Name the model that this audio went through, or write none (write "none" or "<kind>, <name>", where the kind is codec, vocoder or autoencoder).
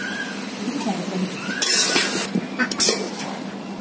none